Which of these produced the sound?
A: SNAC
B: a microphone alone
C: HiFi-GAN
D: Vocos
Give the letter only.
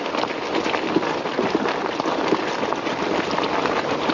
B